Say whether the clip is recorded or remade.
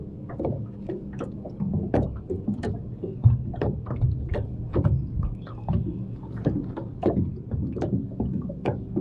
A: remade